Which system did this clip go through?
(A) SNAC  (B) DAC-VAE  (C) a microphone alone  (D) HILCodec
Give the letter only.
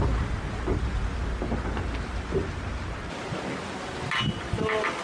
C